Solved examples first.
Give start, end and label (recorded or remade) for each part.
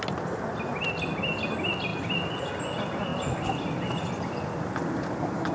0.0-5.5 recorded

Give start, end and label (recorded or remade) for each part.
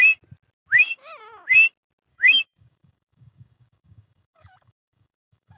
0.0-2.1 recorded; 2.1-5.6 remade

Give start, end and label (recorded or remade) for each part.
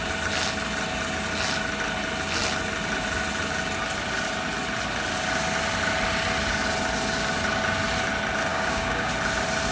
0.0-8.5 recorded; 8.5-9.1 remade; 9.1-9.7 recorded